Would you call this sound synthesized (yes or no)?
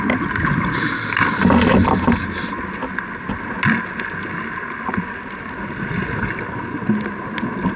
no